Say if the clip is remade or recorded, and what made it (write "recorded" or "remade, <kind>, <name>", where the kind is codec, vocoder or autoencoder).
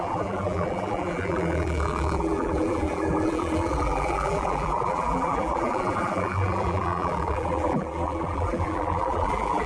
remade, vocoder, BigVGAN v2